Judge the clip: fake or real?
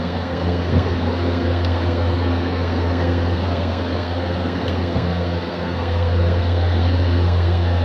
fake